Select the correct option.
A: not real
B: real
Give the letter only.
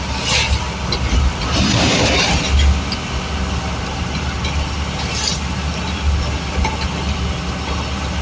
B